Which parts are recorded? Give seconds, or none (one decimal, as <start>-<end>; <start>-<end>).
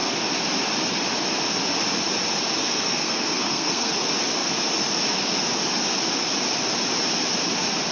0.0-2.6; 3.9-7.9